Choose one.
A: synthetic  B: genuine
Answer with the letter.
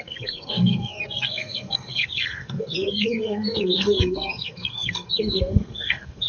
A